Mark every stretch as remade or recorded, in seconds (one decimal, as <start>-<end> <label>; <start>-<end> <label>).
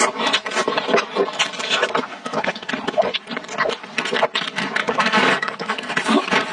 0.0-2.1 recorded; 2.1-2.7 remade; 2.7-4.8 recorded; 4.8-5.9 remade; 5.9-6.5 recorded